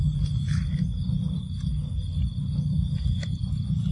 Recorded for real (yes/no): yes